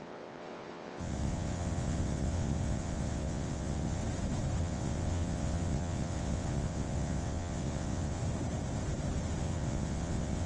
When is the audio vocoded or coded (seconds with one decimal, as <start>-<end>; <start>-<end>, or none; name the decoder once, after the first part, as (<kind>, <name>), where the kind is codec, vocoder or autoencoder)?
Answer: 0.0-4.0 (vocoder, WaveNeXt); 4.6-8.2; 9.4-10.5

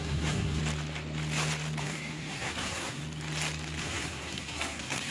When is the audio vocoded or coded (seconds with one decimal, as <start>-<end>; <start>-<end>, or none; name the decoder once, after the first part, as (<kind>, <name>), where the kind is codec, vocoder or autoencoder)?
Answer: 0.0-0.6 (codec, SNAC); 1.8-3.0; 3.8-5.1